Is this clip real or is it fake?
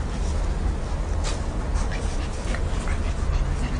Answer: real